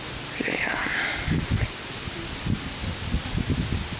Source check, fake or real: real